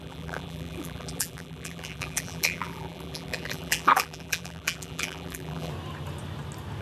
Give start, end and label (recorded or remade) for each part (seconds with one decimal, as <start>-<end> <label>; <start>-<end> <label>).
0.0-5.7 remade; 5.7-6.8 recorded